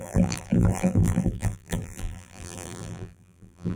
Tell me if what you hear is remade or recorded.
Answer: remade